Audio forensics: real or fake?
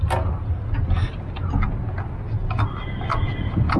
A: real